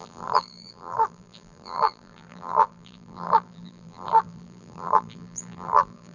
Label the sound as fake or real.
fake